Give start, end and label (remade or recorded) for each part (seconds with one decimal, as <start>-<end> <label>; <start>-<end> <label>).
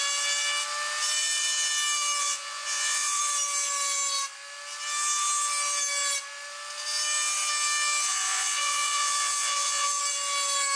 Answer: 0.0-2.2 recorded; 2.2-3.2 remade; 3.2-8.1 recorded; 8.1-10.0 remade; 10.0-10.8 recorded